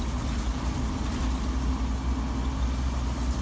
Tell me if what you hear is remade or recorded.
recorded